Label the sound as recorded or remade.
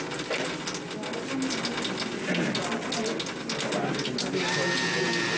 recorded